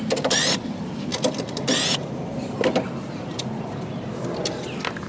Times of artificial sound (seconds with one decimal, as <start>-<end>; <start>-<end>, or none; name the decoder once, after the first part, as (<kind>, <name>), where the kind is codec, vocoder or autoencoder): none